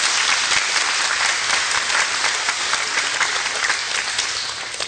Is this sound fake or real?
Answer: real